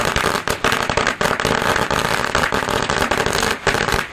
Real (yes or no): yes